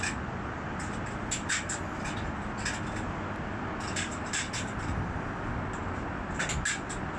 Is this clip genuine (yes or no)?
yes